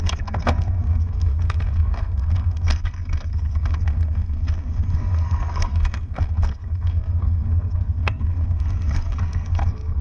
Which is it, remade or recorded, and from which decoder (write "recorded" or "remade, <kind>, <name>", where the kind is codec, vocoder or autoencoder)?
remade, codec, SNAC